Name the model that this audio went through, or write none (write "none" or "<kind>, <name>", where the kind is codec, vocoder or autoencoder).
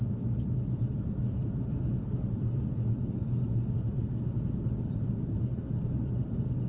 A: none